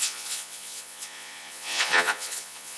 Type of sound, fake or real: fake